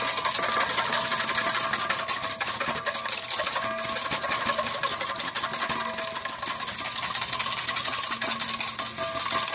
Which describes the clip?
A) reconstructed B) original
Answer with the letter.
B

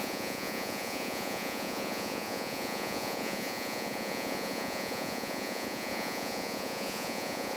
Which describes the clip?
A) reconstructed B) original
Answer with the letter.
A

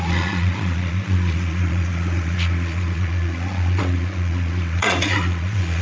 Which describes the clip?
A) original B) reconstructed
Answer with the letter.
B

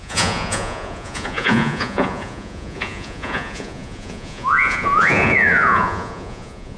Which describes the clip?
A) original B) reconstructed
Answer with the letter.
B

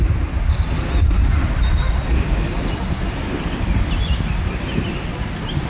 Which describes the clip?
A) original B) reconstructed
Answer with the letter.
A